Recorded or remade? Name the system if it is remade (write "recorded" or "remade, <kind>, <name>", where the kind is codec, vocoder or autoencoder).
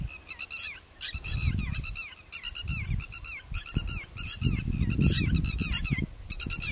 recorded